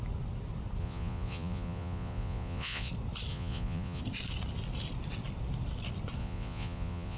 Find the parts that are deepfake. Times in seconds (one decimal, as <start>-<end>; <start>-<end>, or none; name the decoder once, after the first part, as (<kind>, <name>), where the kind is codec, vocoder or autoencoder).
0.8-2.9 (vocoder, Vocos); 3.3-4.0; 6.2-7.2